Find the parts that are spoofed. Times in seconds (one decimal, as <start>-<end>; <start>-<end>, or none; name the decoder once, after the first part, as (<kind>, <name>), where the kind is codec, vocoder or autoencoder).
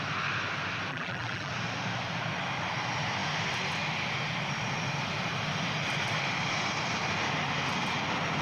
0.9-1.5 (vocoder, BigVGAN v2)